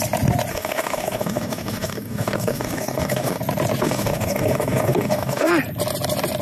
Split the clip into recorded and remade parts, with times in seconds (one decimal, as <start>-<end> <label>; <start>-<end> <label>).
0.0-0.5 recorded; 0.5-3.4 remade; 3.4-3.8 recorded; 3.8-5.5 remade; 5.5-6.4 recorded